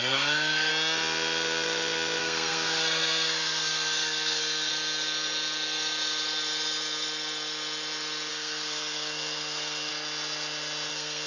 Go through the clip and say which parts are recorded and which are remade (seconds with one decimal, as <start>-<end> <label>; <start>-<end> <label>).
0.0-0.7 remade; 0.7-2.2 recorded; 2.2-4.7 remade; 4.7-8.3 recorded; 8.3-9.9 remade; 9.9-10.9 recorded; 10.9-11.3 remade